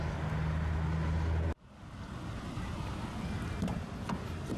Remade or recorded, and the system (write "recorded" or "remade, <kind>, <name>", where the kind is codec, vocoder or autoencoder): recorded